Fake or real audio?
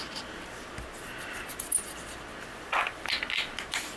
real